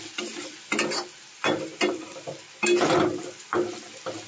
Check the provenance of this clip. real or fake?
real